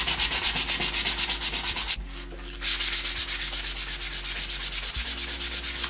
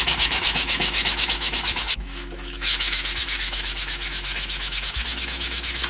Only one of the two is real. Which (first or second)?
first